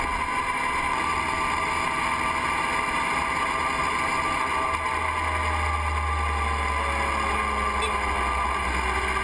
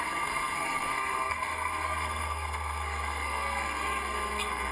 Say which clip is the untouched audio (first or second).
first